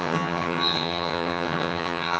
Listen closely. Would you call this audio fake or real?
fake